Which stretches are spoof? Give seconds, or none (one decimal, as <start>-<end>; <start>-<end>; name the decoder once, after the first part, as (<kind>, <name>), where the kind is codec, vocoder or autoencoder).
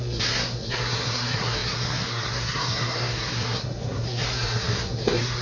0.0-5.4 (codec, SNAC)